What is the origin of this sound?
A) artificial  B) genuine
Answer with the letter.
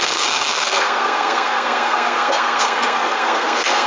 A